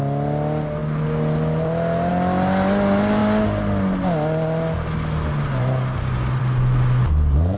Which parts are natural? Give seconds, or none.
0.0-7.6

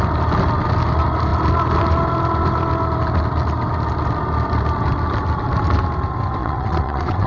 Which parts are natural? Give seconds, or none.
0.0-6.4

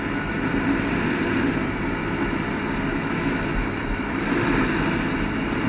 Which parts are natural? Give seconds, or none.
0.0-2.9; 3.4-5.7

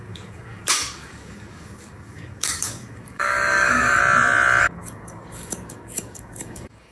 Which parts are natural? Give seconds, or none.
4.0-4.6